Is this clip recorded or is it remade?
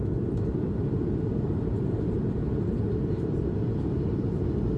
remade